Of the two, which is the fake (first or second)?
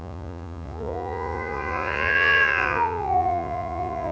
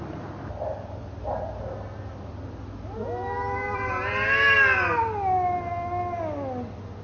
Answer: first